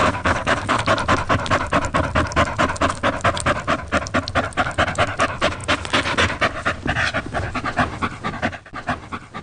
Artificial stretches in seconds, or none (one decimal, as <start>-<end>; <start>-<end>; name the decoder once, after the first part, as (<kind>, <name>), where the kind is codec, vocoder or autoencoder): 0.0-0.8 (codec, SNAC)

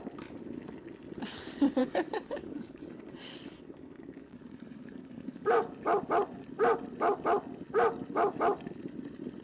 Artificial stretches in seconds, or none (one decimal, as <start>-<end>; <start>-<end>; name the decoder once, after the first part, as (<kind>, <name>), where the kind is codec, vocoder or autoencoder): 1.8-5.7 (codec, DAC)

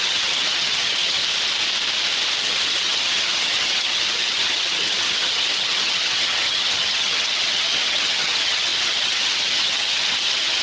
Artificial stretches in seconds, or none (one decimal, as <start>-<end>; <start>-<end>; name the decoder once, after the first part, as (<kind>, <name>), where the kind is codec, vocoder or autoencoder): 0.0-1.2 (vocoder, HiFi-GAN); 2.4-10.6

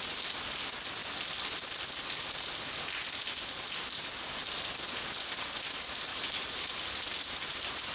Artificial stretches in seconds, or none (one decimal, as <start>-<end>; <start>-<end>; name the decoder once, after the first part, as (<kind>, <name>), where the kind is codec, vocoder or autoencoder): 6.1-6.9 (vocoder, BigVGAN v2)